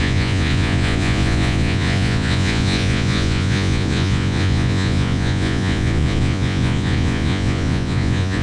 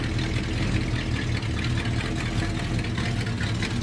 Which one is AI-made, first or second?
first